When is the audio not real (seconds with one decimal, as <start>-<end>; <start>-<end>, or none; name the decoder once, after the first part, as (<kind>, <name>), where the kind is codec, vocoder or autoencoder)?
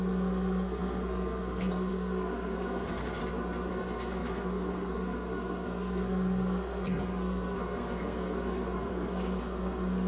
0.0-3.2 (codec, SNAC); 3.7-10.1